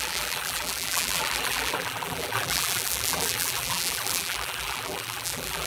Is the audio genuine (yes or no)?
no